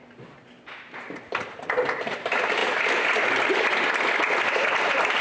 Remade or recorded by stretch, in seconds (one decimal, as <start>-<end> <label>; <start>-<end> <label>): 0.0-5.2 recorded